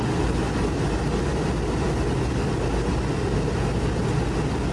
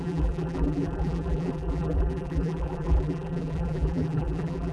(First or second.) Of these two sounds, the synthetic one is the second